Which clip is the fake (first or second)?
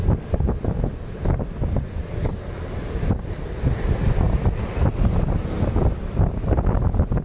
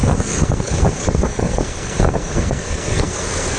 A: second